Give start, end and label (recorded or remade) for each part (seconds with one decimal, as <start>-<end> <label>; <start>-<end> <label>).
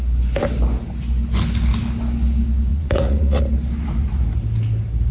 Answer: 0.0-2.7 recorded; 2.7-3.4 remade; 3.4-5.1 recorded